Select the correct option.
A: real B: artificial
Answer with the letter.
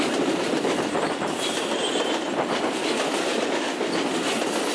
A